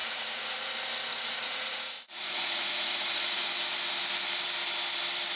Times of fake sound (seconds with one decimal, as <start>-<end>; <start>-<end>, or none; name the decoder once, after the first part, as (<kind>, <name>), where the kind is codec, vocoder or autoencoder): 0.0-0.6 (vocoder, Vocos); 1.1-3.4